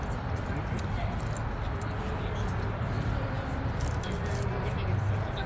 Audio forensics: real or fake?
real